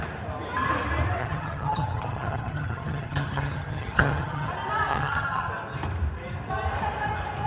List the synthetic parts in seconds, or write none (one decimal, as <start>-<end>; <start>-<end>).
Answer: 1.2-4.5; 4.9-5.5